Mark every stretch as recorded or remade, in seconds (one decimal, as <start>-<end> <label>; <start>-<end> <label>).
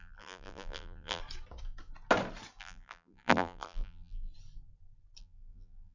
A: 0.0-1.2 remade; 1.2-2.6 recorded; 2.6-4.3 remade; 4.3-5.2 recorded; 5.2-5.9 remade